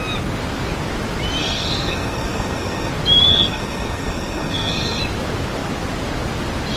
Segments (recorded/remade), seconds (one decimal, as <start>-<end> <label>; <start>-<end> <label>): 0.0-1.4 recorded; 1.4-2.9 remade; 2.9-3.3 recorded; 3.3-5.0 remade; 5.0-6.8 recorded